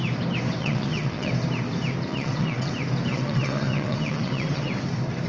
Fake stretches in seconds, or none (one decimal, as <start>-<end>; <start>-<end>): 0.6-1.3; 2.1-2.7; 3.1-4.7